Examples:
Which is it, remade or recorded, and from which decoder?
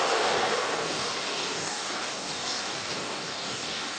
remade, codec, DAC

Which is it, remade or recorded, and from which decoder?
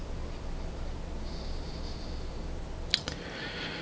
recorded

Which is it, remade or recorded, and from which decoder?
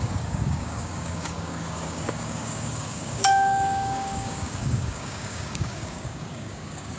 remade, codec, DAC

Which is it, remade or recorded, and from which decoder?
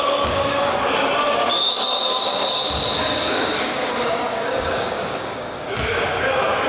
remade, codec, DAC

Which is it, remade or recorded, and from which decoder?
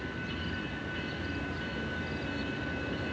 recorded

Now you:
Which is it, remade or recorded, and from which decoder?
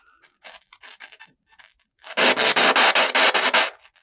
recorded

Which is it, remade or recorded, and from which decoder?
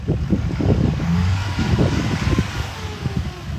remade, codec, DAC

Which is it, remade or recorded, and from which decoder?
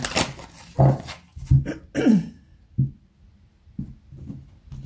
recorded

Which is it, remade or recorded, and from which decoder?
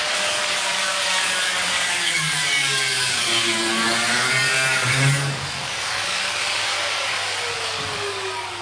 remade, codec, DAC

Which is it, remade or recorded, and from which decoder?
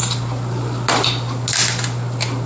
recorded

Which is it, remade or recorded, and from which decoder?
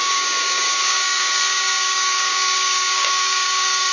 remade, codec, DAC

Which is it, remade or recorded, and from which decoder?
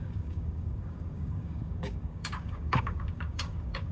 remade, codec, DAC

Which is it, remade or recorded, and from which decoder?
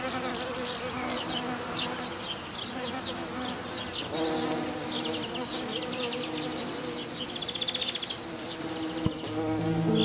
recorded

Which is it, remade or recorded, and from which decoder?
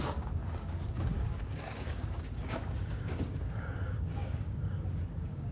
remade, codec, DAC